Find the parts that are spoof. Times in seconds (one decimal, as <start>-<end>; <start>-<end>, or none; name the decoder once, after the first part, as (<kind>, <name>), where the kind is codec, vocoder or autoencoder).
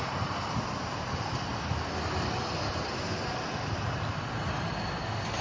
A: none